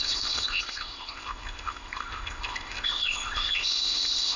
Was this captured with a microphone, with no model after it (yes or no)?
no